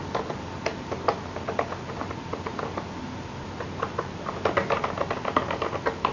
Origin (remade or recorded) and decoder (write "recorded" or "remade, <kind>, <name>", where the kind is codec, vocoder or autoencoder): recorded